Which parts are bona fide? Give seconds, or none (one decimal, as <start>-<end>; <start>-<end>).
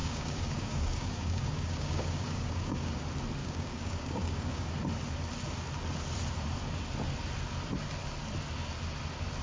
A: 3.0-3.4; 4.7-9.4